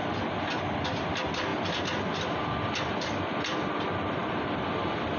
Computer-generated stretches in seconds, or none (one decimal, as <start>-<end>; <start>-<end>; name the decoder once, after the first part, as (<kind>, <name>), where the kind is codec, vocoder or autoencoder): none